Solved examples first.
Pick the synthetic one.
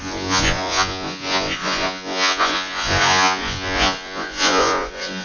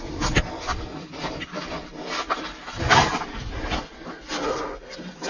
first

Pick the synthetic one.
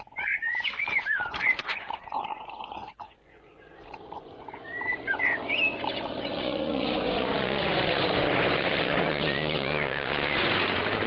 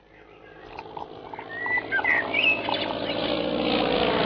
first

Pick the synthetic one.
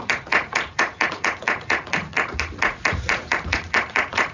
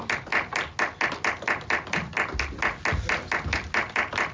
first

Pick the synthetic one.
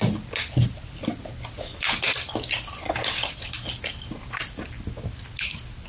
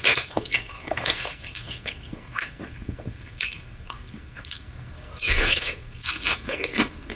second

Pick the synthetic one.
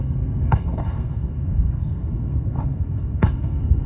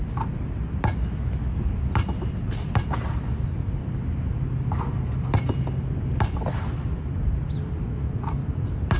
first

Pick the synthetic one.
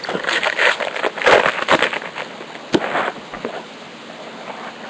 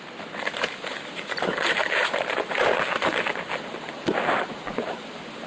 second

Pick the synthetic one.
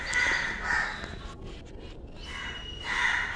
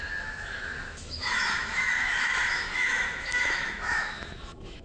second